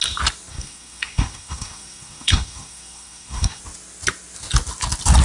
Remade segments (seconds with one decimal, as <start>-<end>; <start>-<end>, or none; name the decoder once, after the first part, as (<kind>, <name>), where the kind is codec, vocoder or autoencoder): 0.5-3.6 (codec, SNAC)